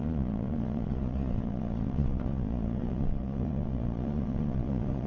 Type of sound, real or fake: fake